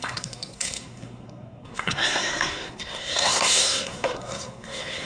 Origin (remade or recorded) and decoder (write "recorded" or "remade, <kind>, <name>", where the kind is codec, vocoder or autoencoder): remade, codec, SNAC